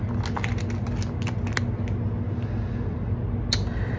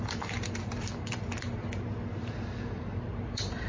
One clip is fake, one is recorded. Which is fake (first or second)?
second